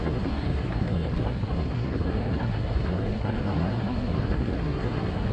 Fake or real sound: fake